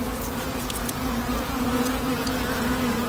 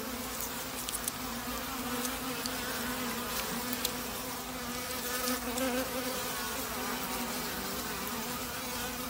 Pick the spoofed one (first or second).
first